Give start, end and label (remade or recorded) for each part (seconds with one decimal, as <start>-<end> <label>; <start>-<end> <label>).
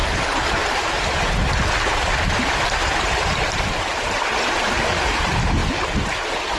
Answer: 0.0-5.6 remade; 5.6-6.6 recorded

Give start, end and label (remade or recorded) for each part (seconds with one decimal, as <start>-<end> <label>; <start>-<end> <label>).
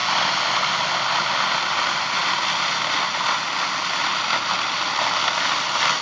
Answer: 0.0-6.0 recorded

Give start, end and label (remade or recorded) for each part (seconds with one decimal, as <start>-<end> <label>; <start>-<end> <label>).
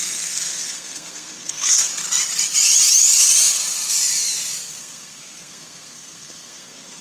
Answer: 0.0-1.9 remade; 1.9-4.6 recorded; 4.6-7.0 remade